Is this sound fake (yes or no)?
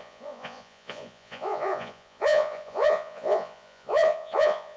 yes